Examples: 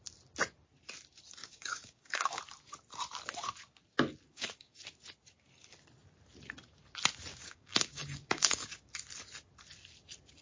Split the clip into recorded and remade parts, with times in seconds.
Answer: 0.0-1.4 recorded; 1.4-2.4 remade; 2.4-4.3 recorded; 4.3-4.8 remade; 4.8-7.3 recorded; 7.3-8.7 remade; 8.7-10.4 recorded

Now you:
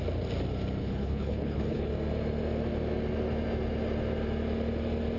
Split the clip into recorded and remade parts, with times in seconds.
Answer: 0.0-0.8 recorded; 0.8-1.9 remade; 1.9-5.2 recorded

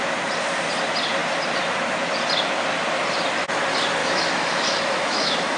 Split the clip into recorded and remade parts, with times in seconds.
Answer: 0.0-4.0 recorded; 4.0-5.6 remade

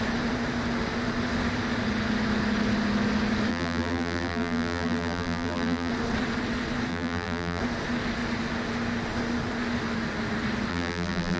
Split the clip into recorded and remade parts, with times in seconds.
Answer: 0.0-3.5 recorded; 3.5-5.9 remade; 5.9-6.9 recorded; 6.9-7.6 remade; 7.6-10.7 recorded; 10.7-11.4 remade

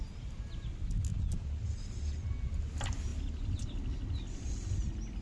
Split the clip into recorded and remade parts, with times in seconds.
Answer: 0.0-5.2 recorded

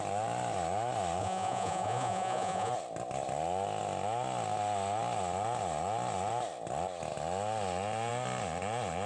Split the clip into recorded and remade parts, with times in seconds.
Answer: 0.0-1.2 recorded; 1.2-2.7 remade; 2.7-9.1 recorded